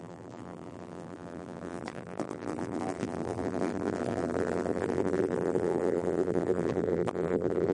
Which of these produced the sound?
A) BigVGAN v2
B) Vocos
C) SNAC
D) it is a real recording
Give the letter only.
A